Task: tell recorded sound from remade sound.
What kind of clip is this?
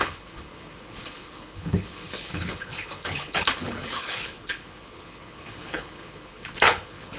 remade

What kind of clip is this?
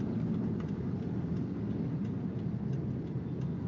recorded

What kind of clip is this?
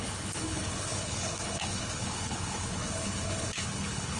remade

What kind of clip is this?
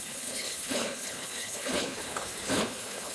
remade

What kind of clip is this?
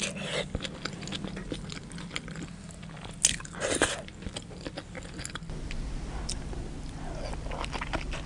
recorded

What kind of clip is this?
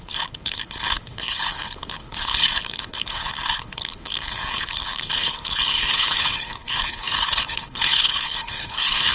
remade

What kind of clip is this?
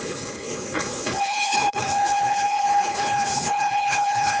remade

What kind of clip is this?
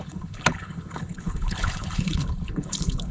remade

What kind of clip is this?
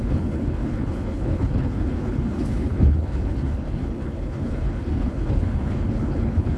remade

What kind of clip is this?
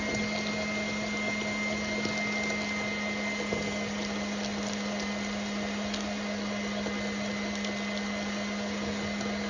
recorded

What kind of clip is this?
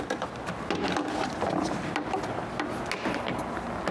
recorded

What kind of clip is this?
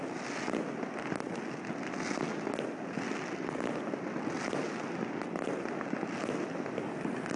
recorded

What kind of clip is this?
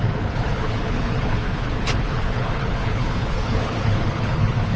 remade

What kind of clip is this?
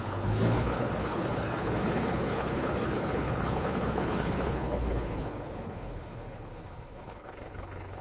remade